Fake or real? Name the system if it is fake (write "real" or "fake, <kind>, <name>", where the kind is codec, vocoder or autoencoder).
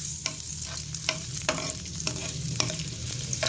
fake, vocoder, BigVGAN v2